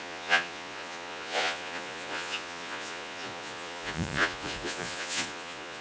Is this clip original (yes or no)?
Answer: no